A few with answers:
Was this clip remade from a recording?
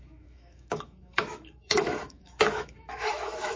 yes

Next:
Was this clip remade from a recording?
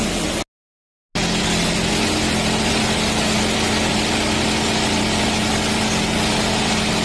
no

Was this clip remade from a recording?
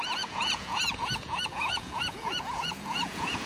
yes